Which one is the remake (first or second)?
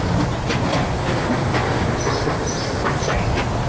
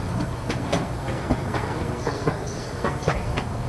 second